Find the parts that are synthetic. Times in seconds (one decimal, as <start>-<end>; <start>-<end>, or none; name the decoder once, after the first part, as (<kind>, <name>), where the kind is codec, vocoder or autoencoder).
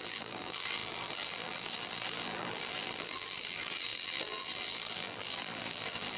0.0-6.2 (vocoder, BigVGAN v2)